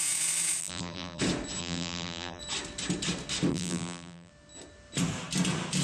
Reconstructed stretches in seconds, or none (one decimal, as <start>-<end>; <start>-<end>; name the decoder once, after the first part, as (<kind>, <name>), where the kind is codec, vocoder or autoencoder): 0.6-1.2 (vocoder, BigVGAN v2); 1.6-2.4; 3.5-4.3